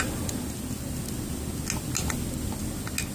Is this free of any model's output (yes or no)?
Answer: yes